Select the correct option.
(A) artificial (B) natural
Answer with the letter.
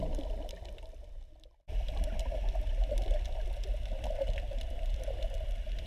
B